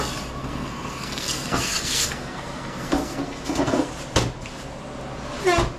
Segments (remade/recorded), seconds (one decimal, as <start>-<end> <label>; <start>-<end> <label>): 0.0-0.4 recorded; 0.4-3.9 remade; 3.9-5.8 recorded